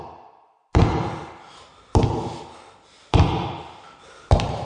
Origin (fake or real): real